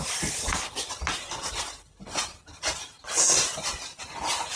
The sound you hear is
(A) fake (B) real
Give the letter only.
B